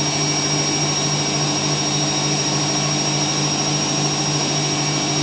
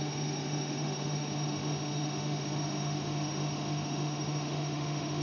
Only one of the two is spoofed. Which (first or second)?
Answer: second